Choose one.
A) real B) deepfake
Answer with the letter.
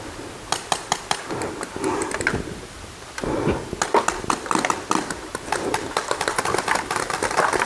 A